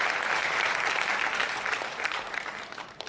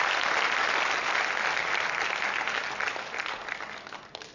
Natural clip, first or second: second